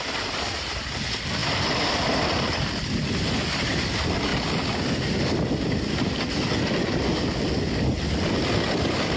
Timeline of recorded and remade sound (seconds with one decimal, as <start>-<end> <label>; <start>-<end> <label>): 0.0-9.2 recorded